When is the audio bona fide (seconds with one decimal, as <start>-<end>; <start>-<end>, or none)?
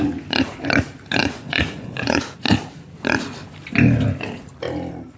0.0-1.2; 2.2-5.2